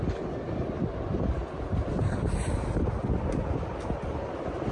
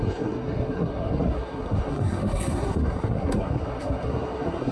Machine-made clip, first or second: second